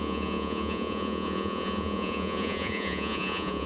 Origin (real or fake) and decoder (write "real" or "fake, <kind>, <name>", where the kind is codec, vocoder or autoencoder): fake, vocoder, Vocos